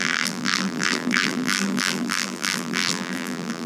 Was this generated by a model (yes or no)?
yes